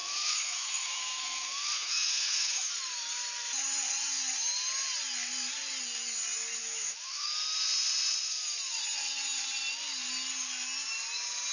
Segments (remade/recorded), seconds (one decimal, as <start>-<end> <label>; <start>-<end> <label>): 0.0-2.7 remade; 2.7-6.6 recorded; 6.6-7.3 remade; 7.3-11.5 recorded